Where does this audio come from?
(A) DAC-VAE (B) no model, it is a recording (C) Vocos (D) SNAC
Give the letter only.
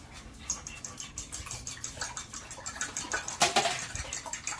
B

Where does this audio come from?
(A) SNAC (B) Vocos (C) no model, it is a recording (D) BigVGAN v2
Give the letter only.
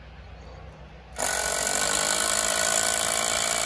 C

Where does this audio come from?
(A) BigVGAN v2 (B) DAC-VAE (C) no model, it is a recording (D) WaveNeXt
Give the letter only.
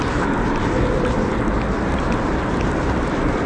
C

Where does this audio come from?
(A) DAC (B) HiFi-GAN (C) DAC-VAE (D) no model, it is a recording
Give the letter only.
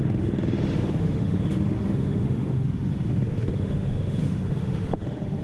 C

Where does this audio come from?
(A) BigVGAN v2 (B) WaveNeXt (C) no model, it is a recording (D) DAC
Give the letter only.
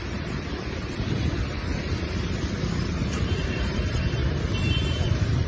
A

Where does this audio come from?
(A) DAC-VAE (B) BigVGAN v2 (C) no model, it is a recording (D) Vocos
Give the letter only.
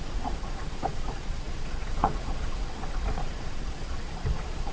D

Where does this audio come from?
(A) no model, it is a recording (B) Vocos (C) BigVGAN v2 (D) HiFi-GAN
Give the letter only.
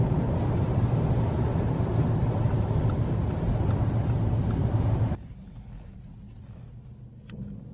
A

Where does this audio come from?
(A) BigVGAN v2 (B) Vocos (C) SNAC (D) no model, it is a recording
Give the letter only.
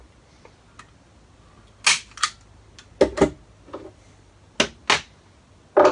D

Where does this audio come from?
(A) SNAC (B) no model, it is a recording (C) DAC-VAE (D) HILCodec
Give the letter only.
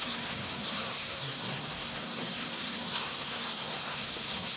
A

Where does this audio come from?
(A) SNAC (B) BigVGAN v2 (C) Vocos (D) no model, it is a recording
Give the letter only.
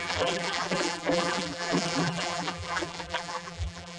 B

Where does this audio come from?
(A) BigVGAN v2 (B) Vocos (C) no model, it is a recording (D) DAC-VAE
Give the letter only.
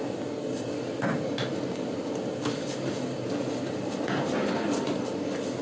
C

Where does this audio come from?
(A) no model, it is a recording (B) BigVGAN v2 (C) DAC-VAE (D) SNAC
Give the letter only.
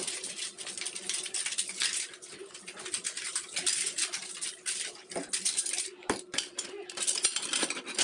A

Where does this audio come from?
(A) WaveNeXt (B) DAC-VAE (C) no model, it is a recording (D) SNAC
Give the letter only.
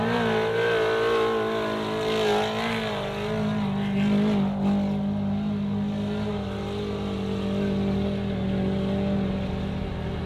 C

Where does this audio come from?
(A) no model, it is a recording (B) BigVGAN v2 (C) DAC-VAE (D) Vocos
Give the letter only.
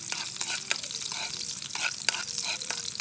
A